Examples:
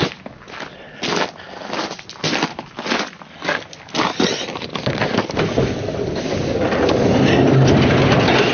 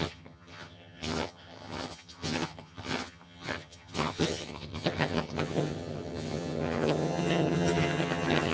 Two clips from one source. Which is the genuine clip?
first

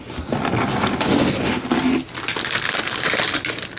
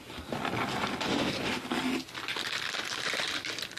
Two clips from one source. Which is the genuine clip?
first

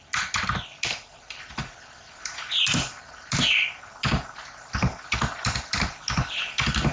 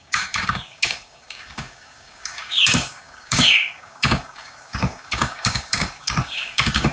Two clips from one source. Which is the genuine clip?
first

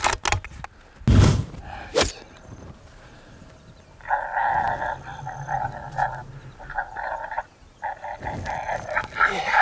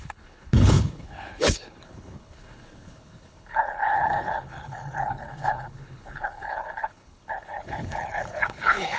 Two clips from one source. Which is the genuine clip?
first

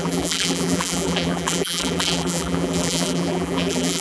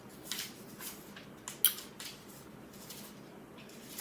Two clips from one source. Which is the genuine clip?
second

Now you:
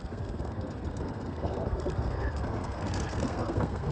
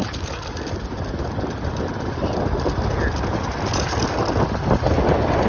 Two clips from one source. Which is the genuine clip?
second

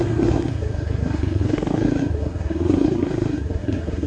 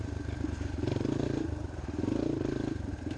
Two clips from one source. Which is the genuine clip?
second